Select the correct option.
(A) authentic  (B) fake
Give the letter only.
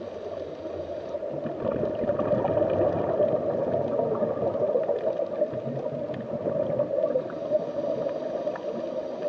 A